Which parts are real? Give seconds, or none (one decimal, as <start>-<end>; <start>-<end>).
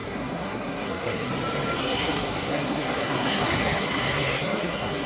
1.3-1.8